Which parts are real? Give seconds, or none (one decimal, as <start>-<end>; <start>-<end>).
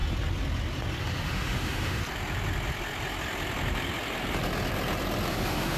0.0-1.0; 2.0-5.3